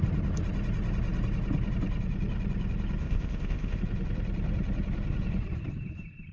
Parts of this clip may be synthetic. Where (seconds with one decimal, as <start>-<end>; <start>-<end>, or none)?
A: 3.0-3.8